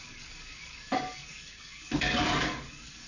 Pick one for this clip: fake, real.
fake